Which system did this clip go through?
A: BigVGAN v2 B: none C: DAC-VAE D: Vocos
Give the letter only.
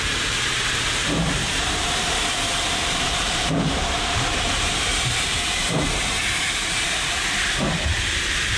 A